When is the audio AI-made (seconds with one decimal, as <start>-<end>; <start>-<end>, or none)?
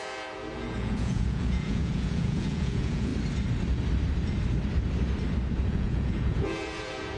0.0-3.1; 5.7-7.2